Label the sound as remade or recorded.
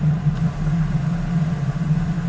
recorded